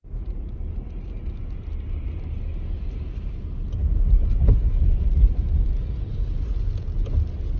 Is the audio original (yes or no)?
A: yes